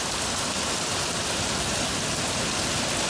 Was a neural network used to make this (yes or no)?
no